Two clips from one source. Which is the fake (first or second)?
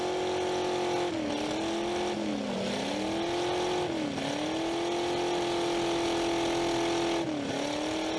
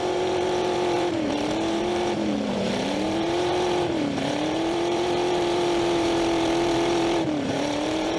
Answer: second